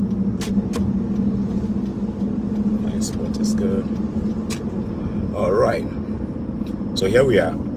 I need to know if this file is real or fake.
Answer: real